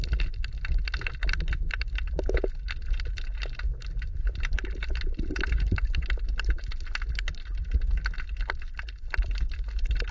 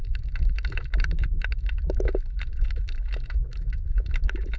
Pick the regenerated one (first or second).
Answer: second